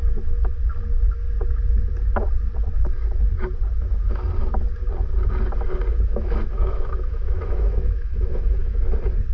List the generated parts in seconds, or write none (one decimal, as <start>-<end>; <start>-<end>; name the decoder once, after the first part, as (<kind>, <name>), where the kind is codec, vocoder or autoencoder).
6.1-8.8 (autoencoder, DAC-VAE)